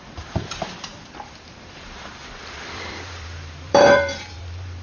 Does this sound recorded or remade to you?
remade